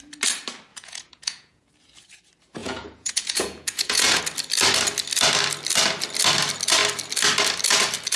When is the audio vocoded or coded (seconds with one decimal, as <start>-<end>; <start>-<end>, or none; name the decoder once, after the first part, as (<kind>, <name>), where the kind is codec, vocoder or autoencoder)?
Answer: 0.7-1.7 (vocoder, Vocos); 2.6-4.2